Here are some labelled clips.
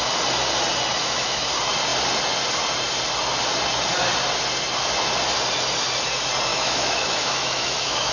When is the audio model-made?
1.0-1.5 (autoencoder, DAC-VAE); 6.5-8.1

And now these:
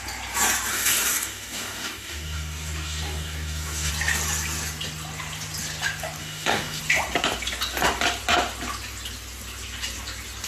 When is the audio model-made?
0.7-3.9 (codec, DAC); 6.2-6.8

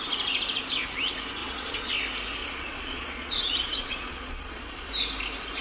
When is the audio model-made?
1.4-1.9 (vocoder, Vocos); 2.4-4.9

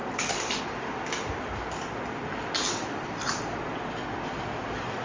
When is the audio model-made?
0.0-0.6 (vocoder, BigVGAN v2); 2.8-3.6